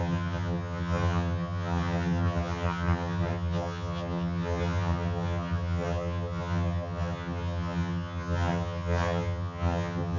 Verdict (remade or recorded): remade